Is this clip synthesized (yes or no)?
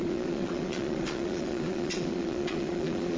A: yes